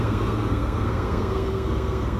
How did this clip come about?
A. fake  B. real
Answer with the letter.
A